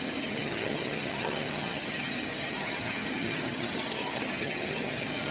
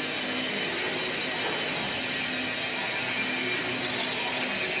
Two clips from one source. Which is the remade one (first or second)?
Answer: first